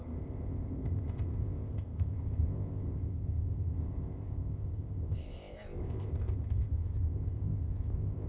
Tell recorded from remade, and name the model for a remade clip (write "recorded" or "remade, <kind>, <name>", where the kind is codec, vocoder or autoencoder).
remade, codec, ZipCodec